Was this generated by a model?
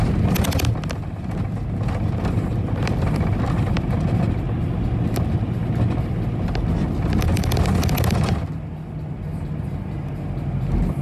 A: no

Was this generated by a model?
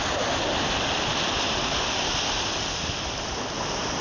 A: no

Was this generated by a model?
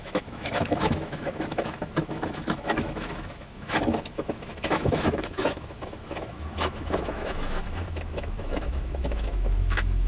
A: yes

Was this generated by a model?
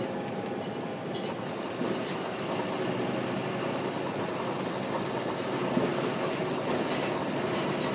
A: no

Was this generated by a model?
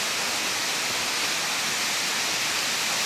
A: no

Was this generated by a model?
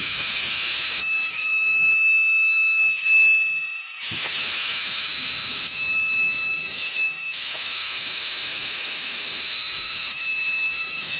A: yes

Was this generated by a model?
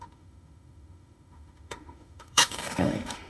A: yes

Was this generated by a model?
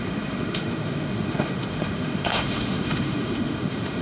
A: yes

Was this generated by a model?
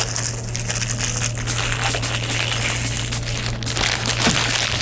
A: no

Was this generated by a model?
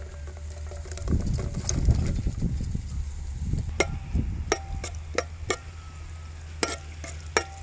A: no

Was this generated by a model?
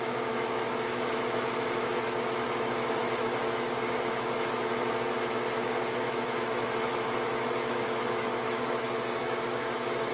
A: yes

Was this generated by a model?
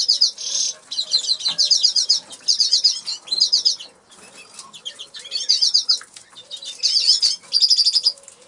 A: no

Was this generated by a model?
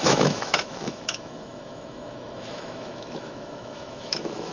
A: yes